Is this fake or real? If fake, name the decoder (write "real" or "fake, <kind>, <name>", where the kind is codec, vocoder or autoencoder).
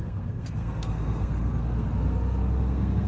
fake, codec, SNAC